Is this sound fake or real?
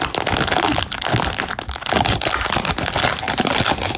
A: real